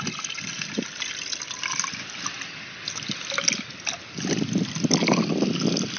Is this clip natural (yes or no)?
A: yes